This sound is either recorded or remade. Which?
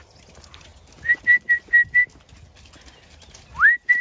recorded